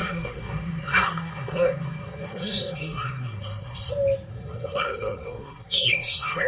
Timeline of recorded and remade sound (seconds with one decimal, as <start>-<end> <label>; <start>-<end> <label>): 0.0-3.9 remade; 3.9-4.3 recorded; 4.3-6.5 remade